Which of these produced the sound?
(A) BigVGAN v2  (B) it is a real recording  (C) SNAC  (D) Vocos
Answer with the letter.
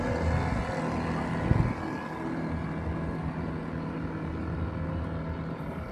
B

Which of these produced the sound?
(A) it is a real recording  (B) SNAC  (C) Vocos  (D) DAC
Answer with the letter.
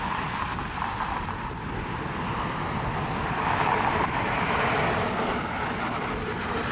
A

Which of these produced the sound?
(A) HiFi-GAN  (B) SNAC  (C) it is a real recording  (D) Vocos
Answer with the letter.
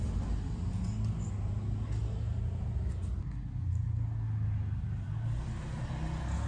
C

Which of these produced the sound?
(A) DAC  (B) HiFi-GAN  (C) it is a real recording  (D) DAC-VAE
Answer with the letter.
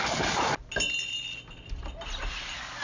C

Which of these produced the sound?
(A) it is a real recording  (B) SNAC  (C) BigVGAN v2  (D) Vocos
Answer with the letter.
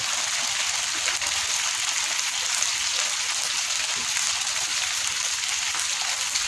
A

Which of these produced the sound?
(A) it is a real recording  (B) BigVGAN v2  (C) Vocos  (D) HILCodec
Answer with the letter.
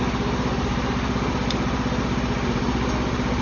A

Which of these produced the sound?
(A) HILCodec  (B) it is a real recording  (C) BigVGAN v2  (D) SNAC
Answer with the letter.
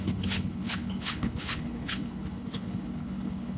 A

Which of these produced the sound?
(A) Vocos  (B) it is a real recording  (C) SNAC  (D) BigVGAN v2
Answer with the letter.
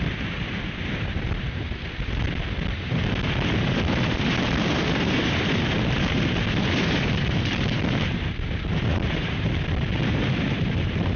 D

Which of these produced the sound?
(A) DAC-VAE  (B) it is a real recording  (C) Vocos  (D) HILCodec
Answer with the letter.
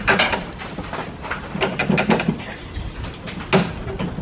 B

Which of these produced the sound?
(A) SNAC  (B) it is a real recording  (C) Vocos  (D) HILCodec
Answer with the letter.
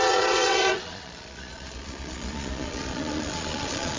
C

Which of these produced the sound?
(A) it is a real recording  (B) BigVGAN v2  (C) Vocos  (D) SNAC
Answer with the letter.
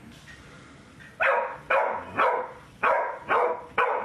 A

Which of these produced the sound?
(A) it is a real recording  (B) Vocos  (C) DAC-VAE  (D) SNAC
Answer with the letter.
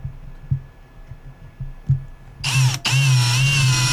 A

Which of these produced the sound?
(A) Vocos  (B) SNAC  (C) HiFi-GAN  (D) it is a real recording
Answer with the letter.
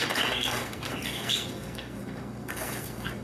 B